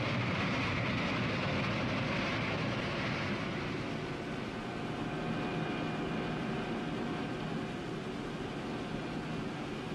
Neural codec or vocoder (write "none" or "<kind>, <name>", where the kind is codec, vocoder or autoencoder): none